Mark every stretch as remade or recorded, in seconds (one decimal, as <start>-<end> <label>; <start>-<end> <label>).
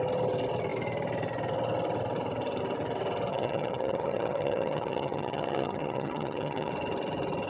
0.0-3.3 recorded; 3.3-6.7 remade; 6.7-7.5 recorded